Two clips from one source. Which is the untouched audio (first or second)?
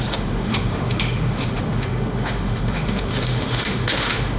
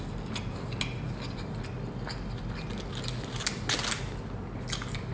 second